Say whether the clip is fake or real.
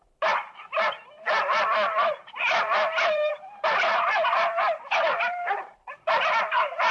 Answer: fake